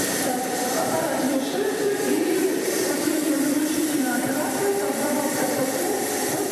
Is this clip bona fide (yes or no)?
no